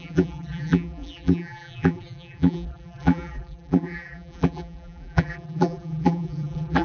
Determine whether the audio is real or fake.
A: fake